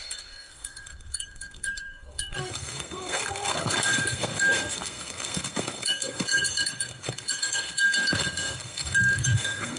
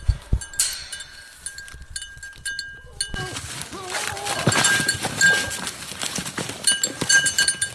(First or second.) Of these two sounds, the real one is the second